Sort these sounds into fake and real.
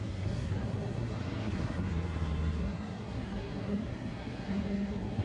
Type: fake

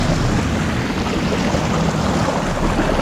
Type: real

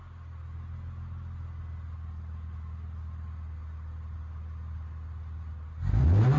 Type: real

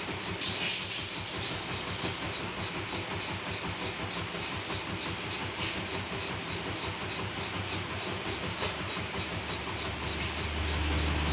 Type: real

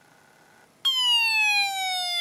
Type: real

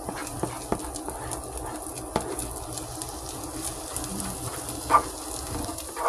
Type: real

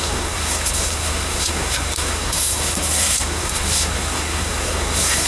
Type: fake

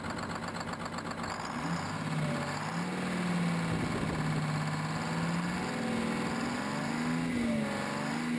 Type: real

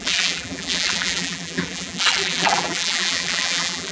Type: fake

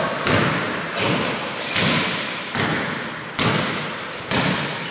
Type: real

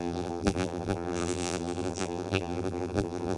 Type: fake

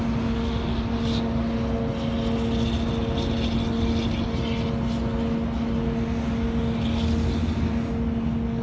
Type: real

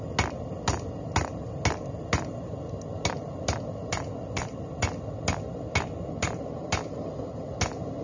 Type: real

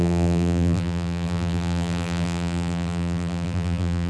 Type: fake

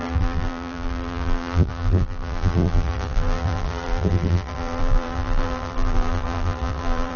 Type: fake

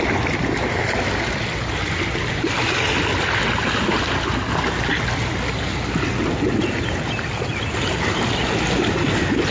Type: real